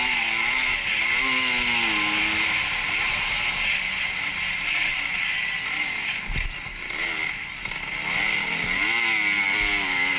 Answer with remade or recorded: recorded